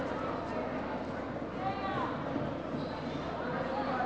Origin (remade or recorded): recorded